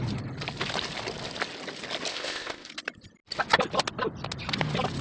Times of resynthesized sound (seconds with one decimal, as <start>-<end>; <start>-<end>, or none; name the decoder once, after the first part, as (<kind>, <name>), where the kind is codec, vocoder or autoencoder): 2.1-2.7 (codec, ZipCodec)